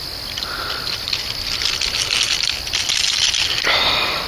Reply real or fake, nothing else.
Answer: real